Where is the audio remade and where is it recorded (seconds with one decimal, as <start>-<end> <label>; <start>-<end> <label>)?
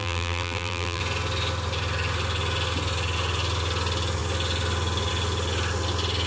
0.0-1.0 remade; 1.0-6.3 recorded